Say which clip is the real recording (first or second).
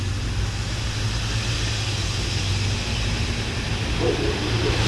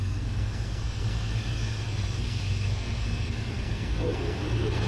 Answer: first